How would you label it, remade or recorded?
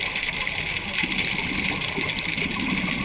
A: recorded